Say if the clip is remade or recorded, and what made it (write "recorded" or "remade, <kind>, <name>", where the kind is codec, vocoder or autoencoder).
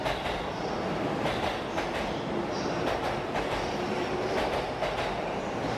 recorded